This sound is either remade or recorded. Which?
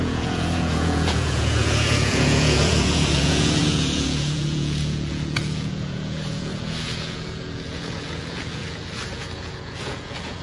remade